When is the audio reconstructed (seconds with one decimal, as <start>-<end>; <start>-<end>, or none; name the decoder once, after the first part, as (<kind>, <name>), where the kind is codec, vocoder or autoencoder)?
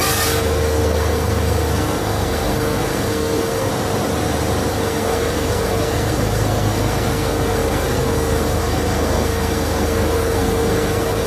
0.0-3.7 (codec, SNAC); 4.7-11.3